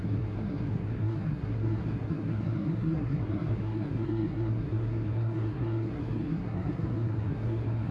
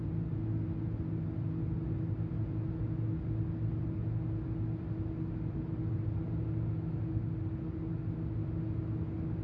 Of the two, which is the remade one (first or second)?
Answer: first